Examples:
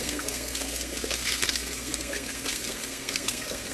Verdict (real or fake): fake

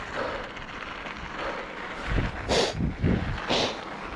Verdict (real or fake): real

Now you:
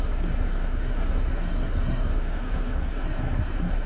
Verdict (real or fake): fake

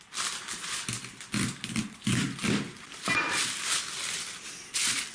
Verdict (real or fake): real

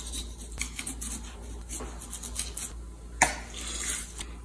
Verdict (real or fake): real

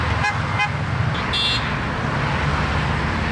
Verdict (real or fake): real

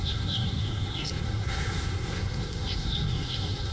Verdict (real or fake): fake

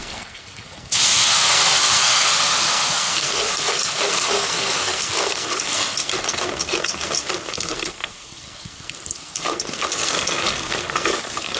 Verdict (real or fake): fake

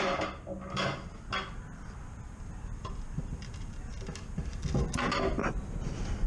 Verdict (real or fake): real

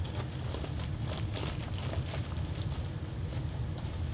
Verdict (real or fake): real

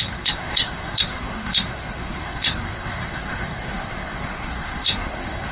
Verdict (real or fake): fake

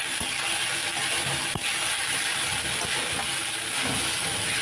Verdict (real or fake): real